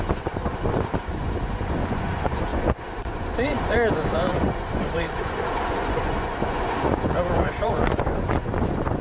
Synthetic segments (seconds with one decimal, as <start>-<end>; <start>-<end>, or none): 0.0-9.0